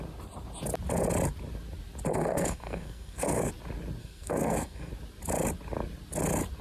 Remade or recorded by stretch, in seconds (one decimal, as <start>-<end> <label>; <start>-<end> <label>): 0.0-2.1 recorded; 2.1-3.5 remade; 3.5-4.0 recorded; 4.0-4.9 remade; 4.9-6.6 recorded